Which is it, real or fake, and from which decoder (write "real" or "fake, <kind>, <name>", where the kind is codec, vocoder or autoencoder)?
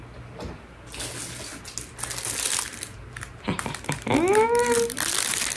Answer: real